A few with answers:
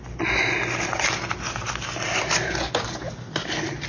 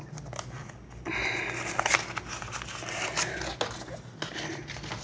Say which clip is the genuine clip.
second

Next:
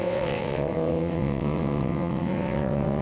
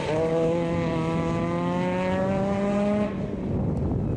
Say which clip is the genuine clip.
second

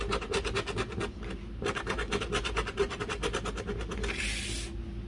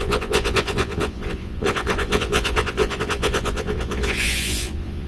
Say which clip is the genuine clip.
first